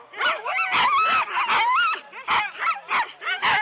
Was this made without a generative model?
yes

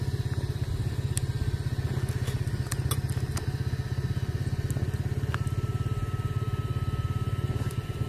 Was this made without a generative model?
yes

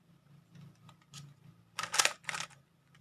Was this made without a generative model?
yes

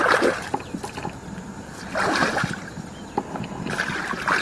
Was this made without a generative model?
yes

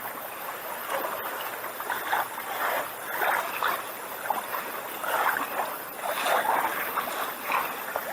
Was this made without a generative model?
yes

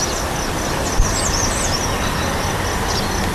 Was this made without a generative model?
yes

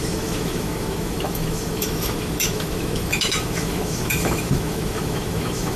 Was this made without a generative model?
no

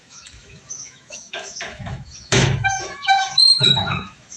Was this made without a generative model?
no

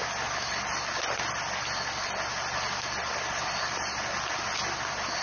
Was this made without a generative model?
yes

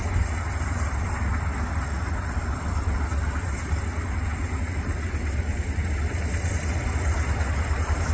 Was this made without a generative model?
yes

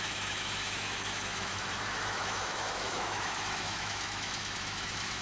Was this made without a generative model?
no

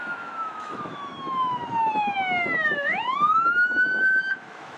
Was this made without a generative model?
no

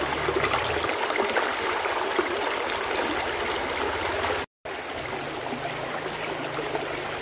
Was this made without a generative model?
yes